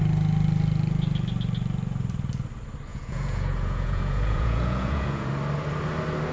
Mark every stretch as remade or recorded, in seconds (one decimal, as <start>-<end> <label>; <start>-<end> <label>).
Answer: 0.0-2.9 recorded; 2.9-5.3 remade; 5.3-6.3 recorded